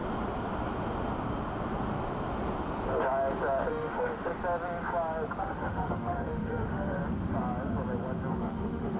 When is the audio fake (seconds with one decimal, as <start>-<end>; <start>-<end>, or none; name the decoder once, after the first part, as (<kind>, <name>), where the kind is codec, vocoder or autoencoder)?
3.7-4.3 (autoencoder, DAC-VAE); 5.4-7.0; 8.3-9.0